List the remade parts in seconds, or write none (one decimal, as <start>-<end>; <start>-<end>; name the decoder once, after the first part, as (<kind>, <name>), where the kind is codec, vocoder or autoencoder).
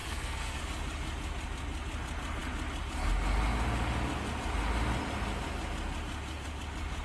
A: 0.0-0.6 (codec, SNAC)